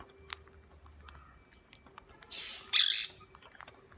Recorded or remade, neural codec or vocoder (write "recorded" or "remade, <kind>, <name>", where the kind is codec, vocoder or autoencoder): recorded